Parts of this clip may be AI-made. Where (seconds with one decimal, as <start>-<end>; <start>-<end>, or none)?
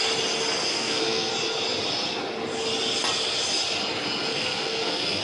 0.7-1.3; 4.3-5.2